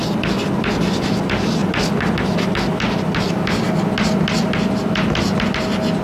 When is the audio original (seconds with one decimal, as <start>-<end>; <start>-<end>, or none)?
0.0-6.0